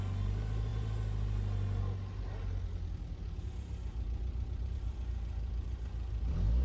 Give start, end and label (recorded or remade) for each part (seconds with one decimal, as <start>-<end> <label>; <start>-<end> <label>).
0.0-6.6 recorded